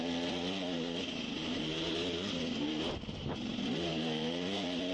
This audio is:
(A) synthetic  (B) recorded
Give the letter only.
A